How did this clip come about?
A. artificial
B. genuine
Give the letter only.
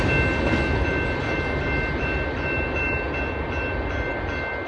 B